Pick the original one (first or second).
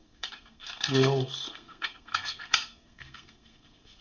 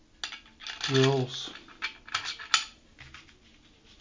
second